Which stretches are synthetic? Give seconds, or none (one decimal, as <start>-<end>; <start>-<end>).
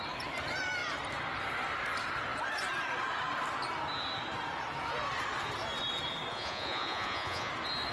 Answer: 6.3-7.5